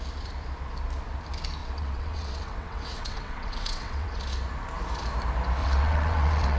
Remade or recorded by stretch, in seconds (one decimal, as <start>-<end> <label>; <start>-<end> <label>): 0.0-1.6 recorded; 1.6-4.2 remade; 4.2-5.6 recorded; 5.6-6.6 remade